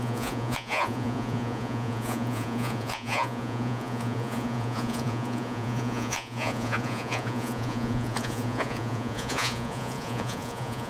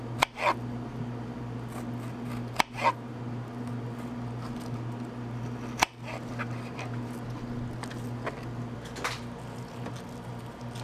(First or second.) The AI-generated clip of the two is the first